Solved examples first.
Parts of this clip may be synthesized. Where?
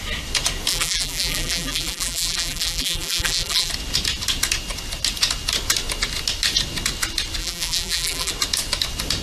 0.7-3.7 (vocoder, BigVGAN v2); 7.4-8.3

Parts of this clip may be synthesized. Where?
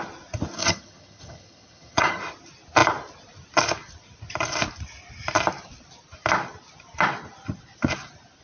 0.6-2.2 (vocoder, HiFi-GAN)